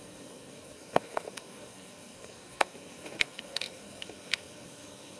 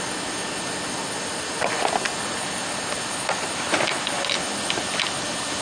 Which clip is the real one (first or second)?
second